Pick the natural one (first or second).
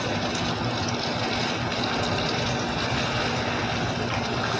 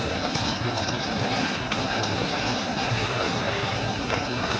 first